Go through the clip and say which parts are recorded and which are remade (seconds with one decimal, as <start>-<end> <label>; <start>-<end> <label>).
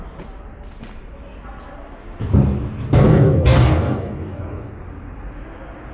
0.0-3.1 recorded; 3.1-4.7 remade; 4.7-5.9 recorded